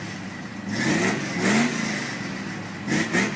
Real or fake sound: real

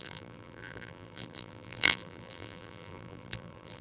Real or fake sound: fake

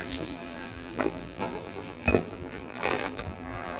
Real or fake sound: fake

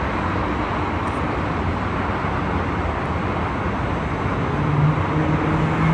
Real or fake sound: real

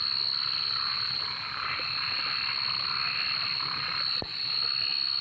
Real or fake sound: fake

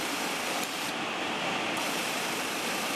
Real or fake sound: fake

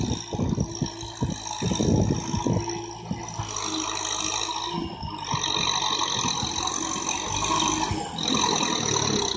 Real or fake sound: real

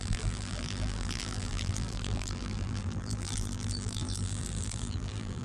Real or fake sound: fake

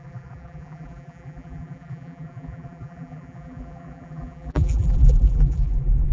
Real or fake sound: fake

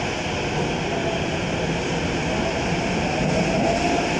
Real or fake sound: real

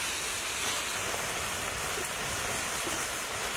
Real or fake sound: real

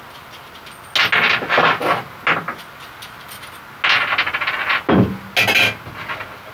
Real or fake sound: real